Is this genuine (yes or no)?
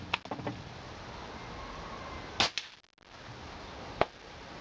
yes